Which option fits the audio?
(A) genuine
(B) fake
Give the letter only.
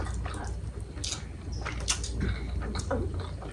A